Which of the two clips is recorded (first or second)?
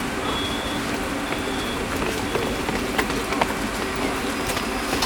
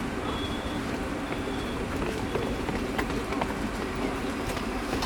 first